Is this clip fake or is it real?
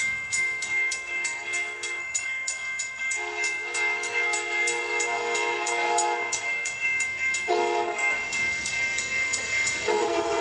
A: fake